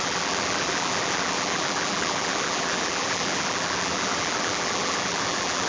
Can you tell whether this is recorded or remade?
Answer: remade